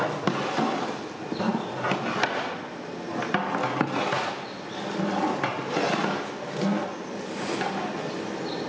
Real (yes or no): yes